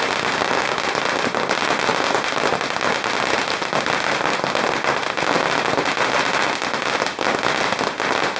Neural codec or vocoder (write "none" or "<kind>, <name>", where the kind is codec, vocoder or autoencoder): none